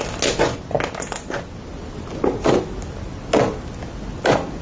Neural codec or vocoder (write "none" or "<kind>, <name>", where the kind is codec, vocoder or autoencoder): none